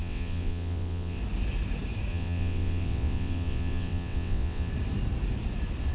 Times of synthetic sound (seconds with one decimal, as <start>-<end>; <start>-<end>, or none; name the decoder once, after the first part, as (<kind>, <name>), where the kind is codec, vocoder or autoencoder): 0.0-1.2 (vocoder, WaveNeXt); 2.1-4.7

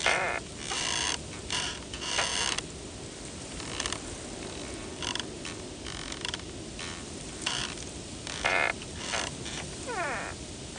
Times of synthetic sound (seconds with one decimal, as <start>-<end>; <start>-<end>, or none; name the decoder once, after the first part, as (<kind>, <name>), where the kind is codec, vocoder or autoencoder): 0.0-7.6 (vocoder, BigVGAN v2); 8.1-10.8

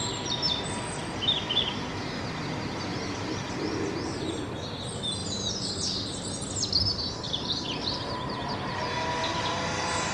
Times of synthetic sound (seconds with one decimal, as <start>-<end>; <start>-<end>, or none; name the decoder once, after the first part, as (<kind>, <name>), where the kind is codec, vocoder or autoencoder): 2.9-3.9 (vocoder, BigVGAN v2); 5.2-8.8

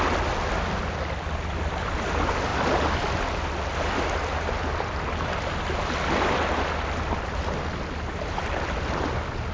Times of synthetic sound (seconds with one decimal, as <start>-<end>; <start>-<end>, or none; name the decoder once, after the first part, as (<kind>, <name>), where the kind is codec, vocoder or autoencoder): none

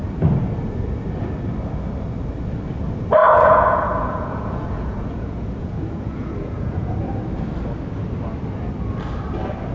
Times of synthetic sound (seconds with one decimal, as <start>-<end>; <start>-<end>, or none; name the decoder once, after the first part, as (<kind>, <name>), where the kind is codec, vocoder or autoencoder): 3.2-7.0 (vocoder, Vocos)

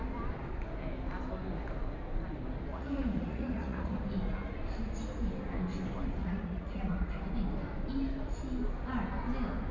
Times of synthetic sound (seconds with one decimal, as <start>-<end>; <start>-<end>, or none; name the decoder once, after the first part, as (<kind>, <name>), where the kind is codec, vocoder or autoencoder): 2.7-4.0 (vocoder, Vocos); 6.2-7.1